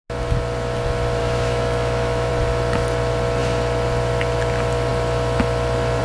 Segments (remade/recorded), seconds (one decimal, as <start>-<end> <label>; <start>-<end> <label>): 0.0-1.2 recorded; 1.2-2.3 remade; 2.3-6.0 recorded